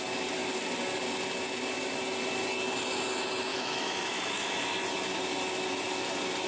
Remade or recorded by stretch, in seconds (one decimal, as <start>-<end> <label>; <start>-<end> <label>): 0.0-3.5 recorded; 3.5-4.5 remade; 4.5-6.5 recorded